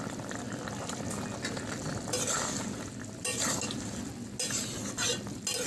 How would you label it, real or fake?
real